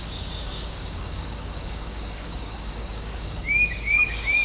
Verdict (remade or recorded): remade